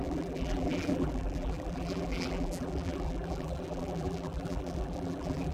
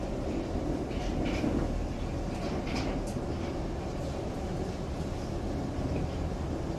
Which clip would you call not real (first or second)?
first